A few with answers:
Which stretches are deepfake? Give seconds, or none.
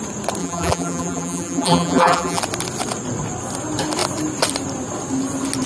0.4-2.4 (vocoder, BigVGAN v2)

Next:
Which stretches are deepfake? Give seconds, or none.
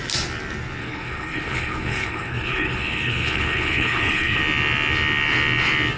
0.8-4.4 (codec, HILCodec)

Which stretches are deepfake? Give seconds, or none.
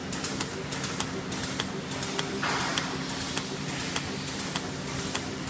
none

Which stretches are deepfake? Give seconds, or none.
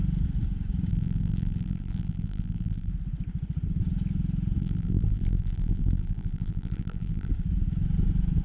0.9-2.9 (vocoder, BigVGAN v2); 4.6-7.3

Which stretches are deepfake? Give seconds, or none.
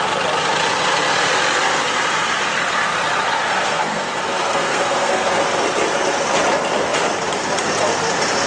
3.4-5.4 (codec, SNAC)